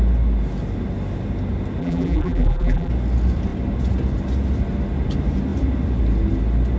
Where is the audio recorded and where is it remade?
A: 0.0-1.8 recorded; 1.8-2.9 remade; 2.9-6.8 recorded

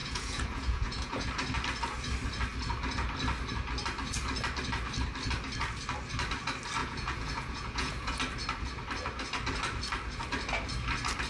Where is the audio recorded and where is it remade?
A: 0.0-1.3 remade; 1.3-6.8 recorded; 6.8-8.2 remade; 8.2-11.3 recorded